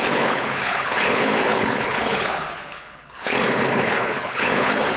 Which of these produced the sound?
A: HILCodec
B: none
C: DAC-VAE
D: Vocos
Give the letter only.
A